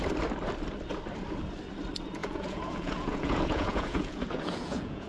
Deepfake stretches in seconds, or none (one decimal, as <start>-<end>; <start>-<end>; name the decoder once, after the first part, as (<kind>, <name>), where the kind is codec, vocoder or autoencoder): 2.2-5.1 (vocoder, Vocos)